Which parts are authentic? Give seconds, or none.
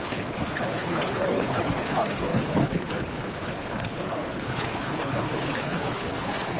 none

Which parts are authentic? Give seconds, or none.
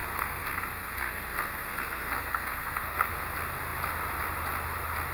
3.1-5.1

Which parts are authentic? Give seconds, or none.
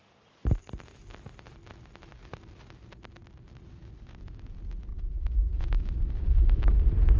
0.0-4.9; 5.6-7.2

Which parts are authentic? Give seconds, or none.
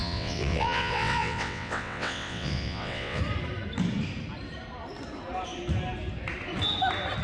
3.2-7.2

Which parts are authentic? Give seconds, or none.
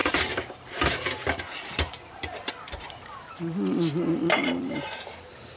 3.4-4.4